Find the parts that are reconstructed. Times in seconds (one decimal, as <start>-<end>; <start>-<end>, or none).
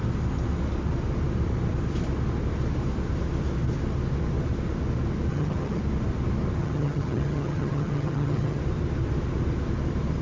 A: 5.3-5.8; 6.6-8.6